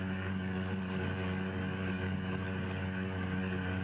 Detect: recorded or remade remade